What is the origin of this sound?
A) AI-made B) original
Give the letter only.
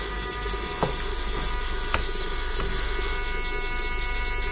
B